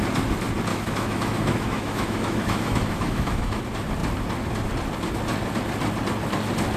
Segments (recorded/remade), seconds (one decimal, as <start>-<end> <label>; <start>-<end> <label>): 0.0-0.7 recorded; 0.7-3.6 remade; 3.6-6.8 recorded